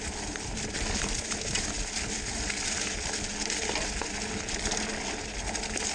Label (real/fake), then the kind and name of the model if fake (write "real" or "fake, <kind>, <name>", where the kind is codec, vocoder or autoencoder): real